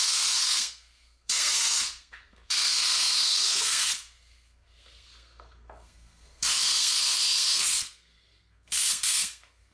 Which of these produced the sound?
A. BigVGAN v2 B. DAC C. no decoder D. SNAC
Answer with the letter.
D